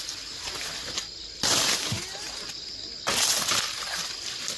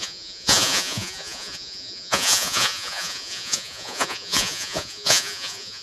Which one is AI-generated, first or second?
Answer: second